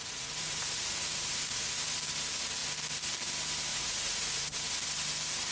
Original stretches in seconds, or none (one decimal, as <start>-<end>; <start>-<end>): 1.7-3.7; 4.7-5.5